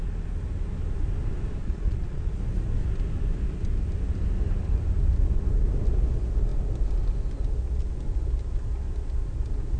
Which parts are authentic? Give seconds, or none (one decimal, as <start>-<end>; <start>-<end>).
0.0-1.6; 2.4-9.8